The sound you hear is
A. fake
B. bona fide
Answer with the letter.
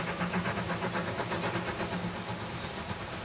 B